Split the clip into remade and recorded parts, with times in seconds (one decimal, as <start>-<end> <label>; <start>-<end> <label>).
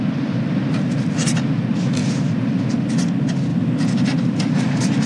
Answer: 0.0-2.0 recorded; 2.0-2.6 remade; 2.6-3.5 recorded; 3.5-4.2 remade; 4.2-5.1 recorded